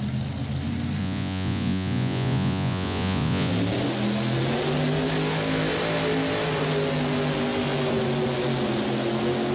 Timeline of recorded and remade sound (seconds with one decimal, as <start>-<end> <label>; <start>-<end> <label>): 0.0-1.0 recorded; 1.0-3.5 remade; 3.5-9.5 recorded